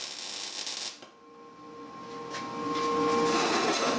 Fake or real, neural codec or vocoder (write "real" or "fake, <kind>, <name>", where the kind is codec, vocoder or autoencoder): real